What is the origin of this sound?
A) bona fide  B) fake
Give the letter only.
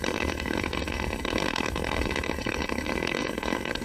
B